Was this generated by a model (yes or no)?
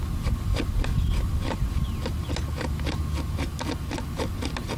no